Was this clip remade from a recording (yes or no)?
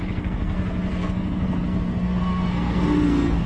yes